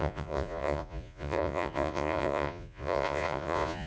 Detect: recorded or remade remade